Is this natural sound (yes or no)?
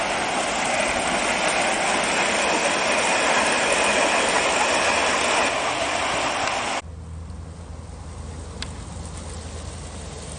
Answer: yes